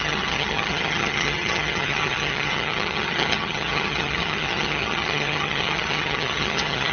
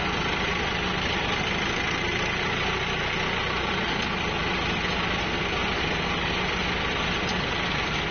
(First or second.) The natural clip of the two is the second